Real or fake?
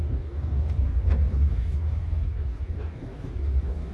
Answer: fake